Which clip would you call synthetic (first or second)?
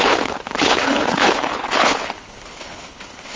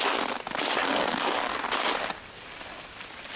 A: first